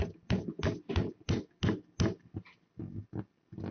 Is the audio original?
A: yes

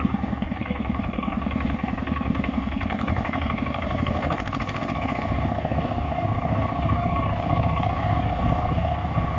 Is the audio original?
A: no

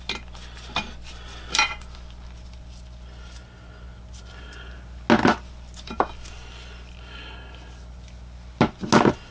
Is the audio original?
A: yes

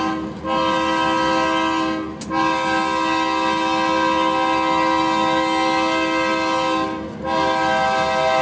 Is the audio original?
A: yes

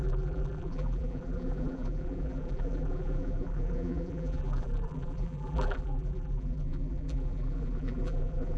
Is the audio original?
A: no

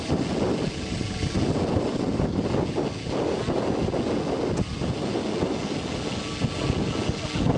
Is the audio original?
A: yes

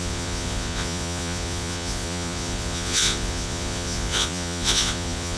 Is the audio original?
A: no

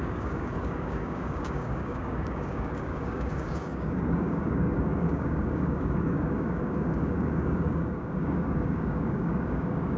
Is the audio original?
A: no